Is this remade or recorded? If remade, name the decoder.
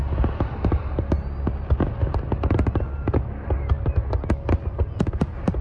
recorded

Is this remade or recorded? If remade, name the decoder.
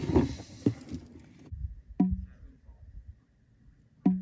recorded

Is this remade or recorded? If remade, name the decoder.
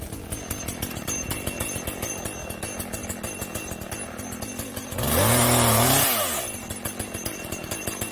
recorded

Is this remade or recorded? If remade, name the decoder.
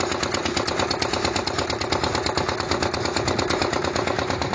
recorded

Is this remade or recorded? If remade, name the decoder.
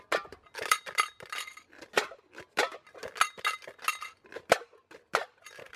recorded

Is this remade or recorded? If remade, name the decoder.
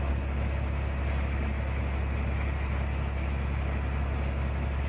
recorded